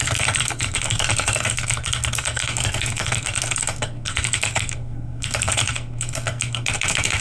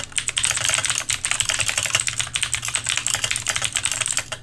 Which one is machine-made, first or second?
first